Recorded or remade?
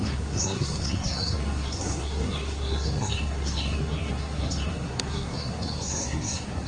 remade